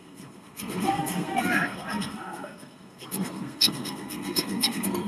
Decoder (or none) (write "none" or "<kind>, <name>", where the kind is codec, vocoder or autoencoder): codec, SNAC